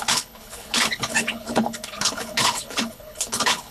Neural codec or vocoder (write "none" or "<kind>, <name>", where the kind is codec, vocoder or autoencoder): codec, HILCodec